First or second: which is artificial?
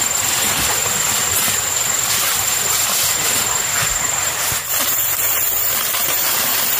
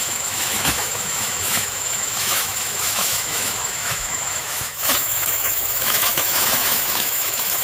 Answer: second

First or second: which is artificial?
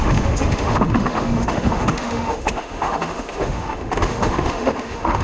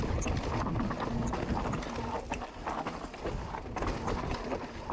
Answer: first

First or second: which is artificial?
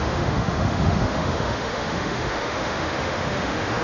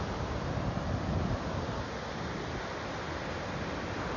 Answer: first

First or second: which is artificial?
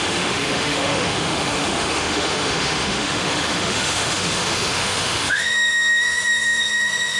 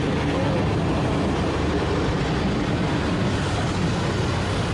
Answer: first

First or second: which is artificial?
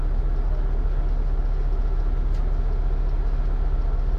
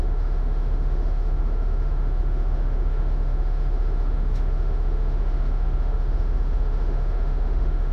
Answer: second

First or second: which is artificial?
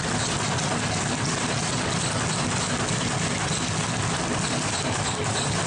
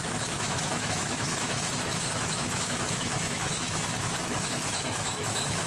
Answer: second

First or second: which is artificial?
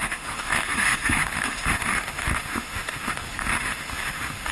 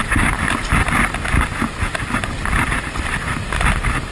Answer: first